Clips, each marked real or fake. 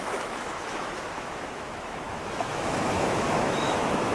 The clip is fake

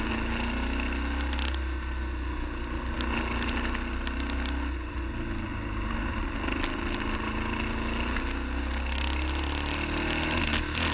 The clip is real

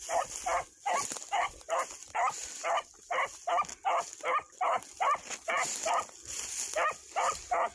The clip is real